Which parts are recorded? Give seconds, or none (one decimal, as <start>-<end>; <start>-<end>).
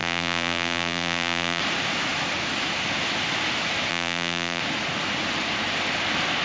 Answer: 1.6-3.9; 4.6-6.4